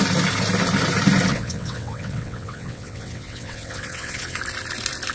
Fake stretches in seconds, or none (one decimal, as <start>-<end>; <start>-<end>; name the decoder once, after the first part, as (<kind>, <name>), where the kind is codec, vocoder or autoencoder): 1.3-4.4 (vocoder, WaveNeXt)